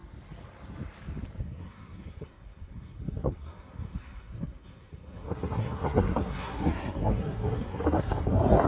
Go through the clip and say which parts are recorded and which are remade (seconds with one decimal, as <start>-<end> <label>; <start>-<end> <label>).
0.0-1.4 recorded; 1.4-8.7 remade